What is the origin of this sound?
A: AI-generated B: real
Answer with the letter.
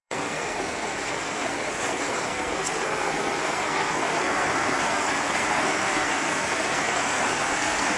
A